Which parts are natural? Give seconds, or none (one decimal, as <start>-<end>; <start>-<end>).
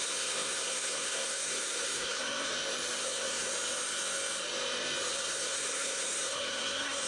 2.5-3.0; 3.5-5.1